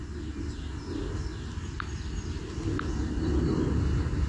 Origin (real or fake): real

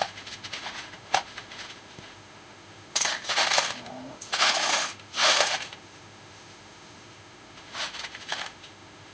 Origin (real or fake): fake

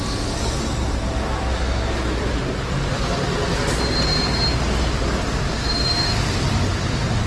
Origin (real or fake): real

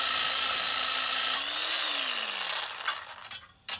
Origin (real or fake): real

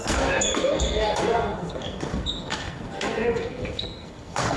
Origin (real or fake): fake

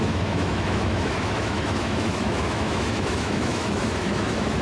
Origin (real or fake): fake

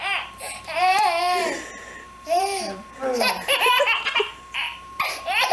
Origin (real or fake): fake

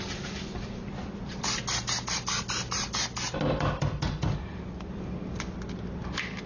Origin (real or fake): real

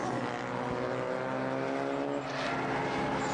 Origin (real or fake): real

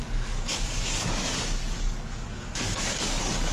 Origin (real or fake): fake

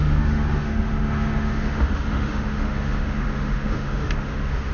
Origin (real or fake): fake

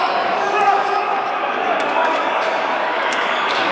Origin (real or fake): fake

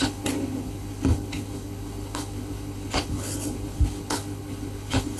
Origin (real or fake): fake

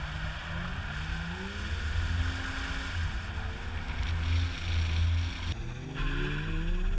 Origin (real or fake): real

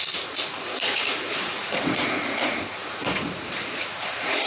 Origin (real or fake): fake